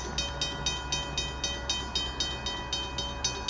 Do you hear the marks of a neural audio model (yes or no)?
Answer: no